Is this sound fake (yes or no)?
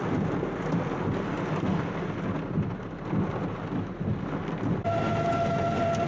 no